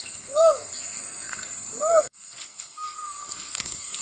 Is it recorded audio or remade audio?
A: remade